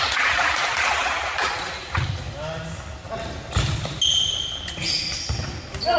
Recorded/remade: recorded